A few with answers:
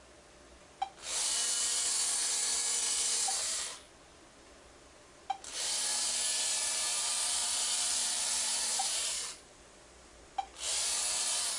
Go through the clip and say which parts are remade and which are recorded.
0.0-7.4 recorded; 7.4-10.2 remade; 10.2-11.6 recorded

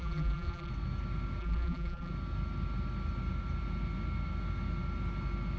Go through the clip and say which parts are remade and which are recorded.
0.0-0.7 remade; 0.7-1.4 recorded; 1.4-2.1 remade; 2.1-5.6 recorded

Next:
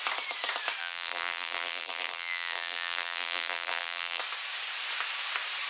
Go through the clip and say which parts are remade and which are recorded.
0.0-0.8 recorded; 0.8-4.2 remade; 4.2-5.7 recorded

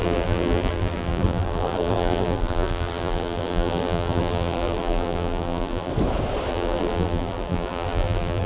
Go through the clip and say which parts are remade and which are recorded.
0.0-5.9 remade; 5.9-6.5 recorded; 6.5-8.5 remade

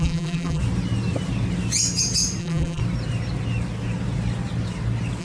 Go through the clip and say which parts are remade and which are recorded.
0.0-0.6 remade; 0.6-2.4 recorded; 2.4-2.8 remade; 2.8-5.2 recorded

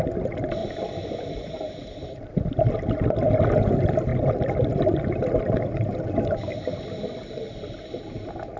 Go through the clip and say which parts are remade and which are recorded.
0.0-0.6 recorded; 0.6-2.3 remade; 2.3-8.6 recorded